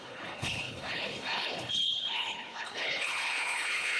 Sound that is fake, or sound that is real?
fake